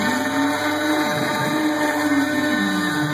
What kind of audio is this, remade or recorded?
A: recorded